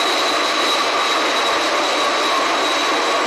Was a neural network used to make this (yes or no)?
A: no